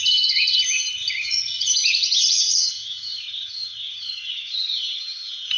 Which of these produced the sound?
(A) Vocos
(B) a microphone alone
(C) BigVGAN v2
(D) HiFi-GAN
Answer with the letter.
D